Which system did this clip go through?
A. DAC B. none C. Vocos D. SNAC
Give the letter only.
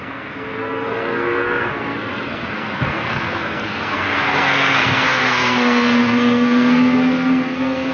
D